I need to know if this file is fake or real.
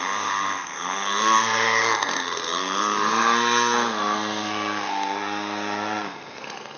fake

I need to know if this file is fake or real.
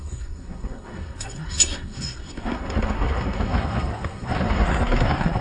fake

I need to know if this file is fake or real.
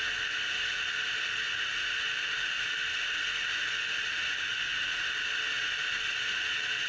real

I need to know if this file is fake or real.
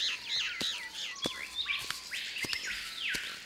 real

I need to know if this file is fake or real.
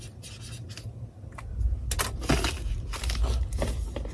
real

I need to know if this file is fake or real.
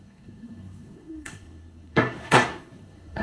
fake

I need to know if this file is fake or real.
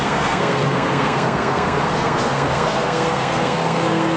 fake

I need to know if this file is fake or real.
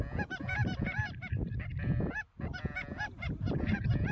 real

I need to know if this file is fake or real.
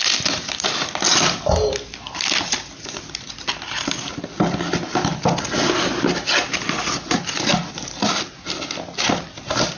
real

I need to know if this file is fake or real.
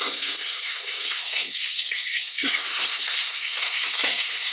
fake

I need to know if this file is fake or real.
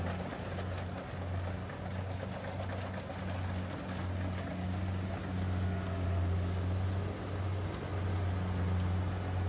real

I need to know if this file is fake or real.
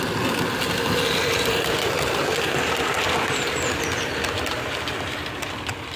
real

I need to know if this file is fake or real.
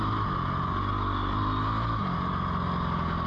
real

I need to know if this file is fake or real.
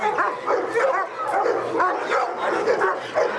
real